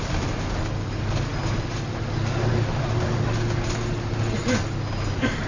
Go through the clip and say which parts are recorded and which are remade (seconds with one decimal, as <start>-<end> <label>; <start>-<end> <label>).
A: 0.0-5.5 recorded